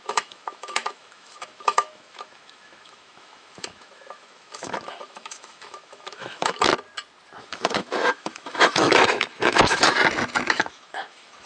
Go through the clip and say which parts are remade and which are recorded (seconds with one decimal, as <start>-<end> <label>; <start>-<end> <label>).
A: 0.0-6.7 remade; 6.7-7.4 recorded; 7.4-10.0 remade; 10.0-10.5 recorded; 10.5-11.5 remade